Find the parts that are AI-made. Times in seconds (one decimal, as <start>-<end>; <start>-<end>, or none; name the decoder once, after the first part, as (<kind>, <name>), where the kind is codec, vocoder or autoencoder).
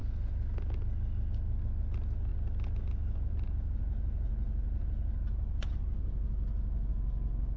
none